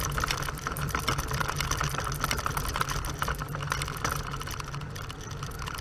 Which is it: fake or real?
fake